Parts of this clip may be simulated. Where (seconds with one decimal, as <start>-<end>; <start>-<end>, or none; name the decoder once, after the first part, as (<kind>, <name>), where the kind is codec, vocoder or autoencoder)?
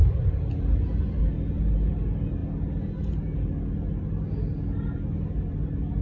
none